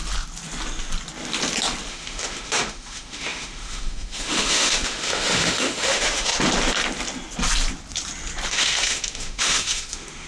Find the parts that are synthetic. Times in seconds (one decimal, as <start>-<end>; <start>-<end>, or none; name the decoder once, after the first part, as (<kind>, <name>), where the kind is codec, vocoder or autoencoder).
1.9-6.3 (autoencoder, DAC-VAE); 8.5-10.3